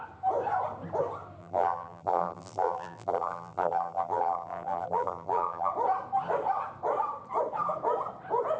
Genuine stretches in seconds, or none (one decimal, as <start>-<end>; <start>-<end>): 0.0-1.4; 5.7-8.6